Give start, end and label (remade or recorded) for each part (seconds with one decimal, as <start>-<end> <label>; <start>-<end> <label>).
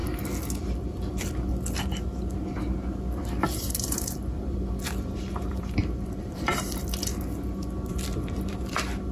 0.0-0.8 recorded; 0.8-1.5 remade; 1.5-3.7 recorded; 3.7-7.1 remade; 7.1-7.9 recorded; 7.9-9.1 remade